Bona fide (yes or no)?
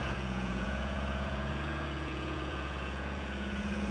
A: no